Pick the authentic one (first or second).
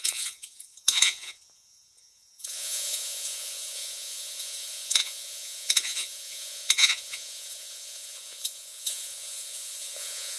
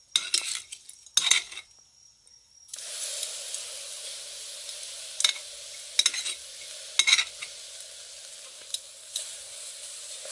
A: second